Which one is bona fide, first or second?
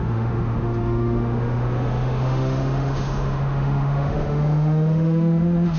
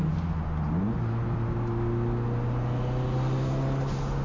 second